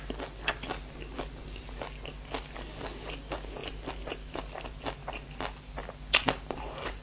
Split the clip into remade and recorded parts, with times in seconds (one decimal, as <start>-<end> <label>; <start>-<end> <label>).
0.0-7.0 recorded